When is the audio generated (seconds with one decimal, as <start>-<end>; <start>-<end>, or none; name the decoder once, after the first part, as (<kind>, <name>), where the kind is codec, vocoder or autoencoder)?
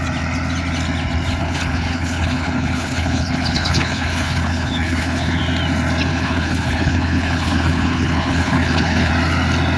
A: 1.4-5.4 (codec, HILCodec); 6.1-9.1